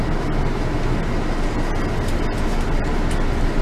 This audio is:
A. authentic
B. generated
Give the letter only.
A